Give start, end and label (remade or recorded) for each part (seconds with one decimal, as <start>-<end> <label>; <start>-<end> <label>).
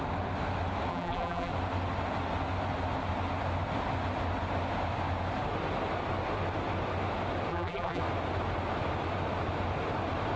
0.0-0.9 recorded; 0.9-1.5 remade; 1.5-7.5 recorded; 7.5-8.0 remade; 8.0-10.4 recorded